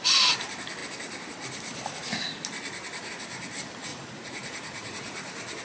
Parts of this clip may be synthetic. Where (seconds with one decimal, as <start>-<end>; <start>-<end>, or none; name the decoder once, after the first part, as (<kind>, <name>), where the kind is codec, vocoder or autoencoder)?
3.9-5.6 (vocoder, Vocos)